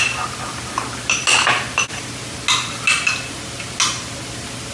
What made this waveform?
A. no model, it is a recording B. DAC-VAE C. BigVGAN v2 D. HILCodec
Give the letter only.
A